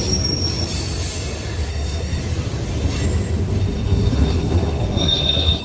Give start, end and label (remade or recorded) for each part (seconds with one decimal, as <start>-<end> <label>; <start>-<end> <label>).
0.0-1.7 recorded; 1.7-2.2 remade; 2.2-3.6 recorded; 3.6-5.6 remade